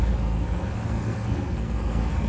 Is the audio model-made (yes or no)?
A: yes